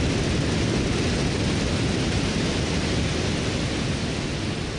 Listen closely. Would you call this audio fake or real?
real